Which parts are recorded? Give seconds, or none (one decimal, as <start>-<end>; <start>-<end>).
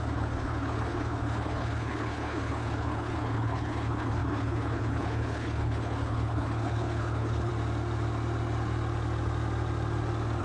7.5-10.4